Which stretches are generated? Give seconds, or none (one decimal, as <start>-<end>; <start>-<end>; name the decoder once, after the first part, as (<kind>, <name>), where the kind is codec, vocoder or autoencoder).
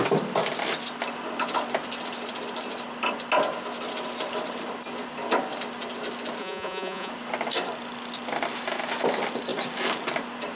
6.4-7.1 (vocoder, Vocos)